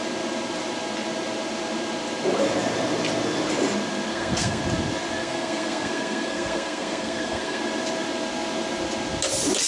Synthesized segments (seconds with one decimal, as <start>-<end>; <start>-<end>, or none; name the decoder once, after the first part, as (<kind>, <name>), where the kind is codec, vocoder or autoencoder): 4.1-4.6 (codec, SNAC); 5.2-7.6